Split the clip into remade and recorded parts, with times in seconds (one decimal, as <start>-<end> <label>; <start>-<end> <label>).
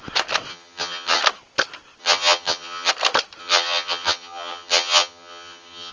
0.0-0.5 recorded; 0.5-1.2 remade; 1.2-2.0 recorded; 2.0-2.9 remade; 2.9-3.4 recorded; 3.4-5.9 remade